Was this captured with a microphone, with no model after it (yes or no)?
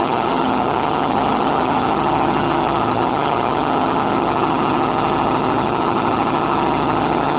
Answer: no